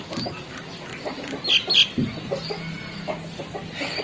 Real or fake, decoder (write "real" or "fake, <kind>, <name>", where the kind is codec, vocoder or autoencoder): real